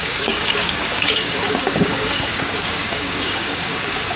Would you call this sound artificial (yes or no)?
yes